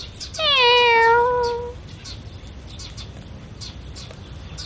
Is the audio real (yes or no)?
yes